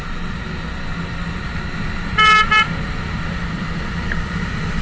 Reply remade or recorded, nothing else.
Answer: recorded